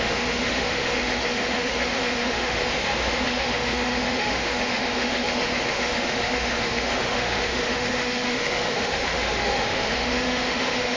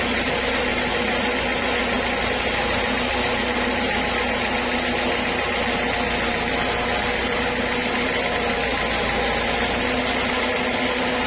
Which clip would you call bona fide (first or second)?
second